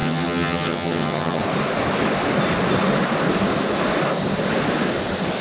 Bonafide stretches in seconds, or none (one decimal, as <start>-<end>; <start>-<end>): 1.4-5.4